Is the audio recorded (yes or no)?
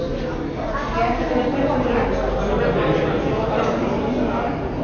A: yes